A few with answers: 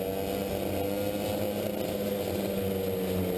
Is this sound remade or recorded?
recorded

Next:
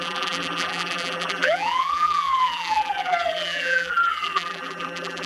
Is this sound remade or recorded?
remade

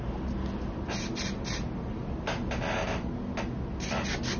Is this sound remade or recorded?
recorded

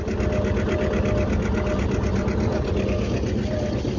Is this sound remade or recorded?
recorded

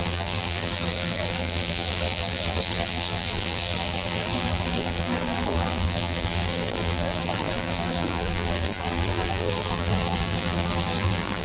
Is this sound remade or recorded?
remade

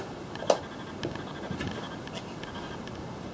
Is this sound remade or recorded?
recorded